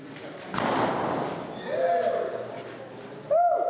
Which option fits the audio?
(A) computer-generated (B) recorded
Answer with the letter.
B